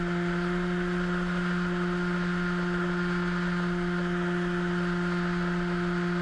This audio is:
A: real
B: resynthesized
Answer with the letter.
A